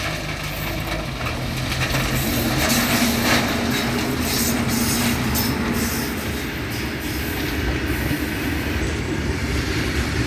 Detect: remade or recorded recorded